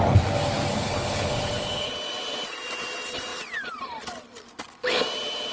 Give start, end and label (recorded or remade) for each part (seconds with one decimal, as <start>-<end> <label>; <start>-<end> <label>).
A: 0.0-0.7 recorded; 0.7-1.9 remade; 1.9-5.5 recorded